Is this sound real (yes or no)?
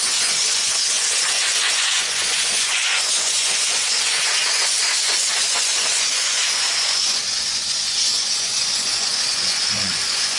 no